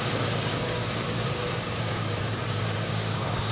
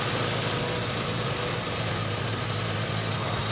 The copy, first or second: first